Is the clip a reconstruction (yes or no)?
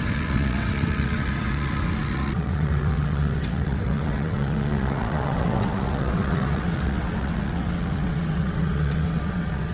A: yes